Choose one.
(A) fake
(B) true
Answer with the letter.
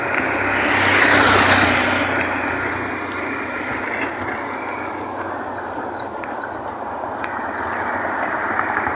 A